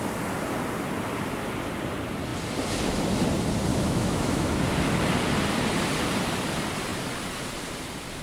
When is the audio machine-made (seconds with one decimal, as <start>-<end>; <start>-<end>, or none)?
3.7-4.6